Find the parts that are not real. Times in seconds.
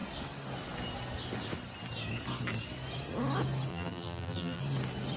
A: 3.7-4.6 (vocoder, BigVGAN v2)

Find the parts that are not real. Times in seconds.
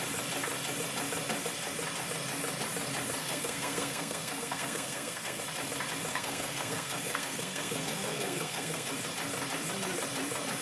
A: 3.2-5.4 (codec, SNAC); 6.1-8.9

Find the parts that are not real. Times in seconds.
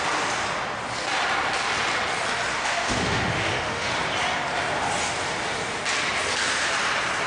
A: 2.6-3.9 (autoencoder, DAC-VAE)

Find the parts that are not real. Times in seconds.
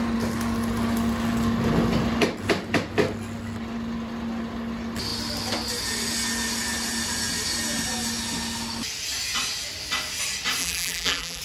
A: 10.6-11.4 (vocoder, BigVGAN v2)